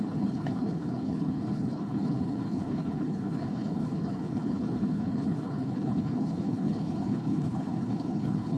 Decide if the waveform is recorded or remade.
remade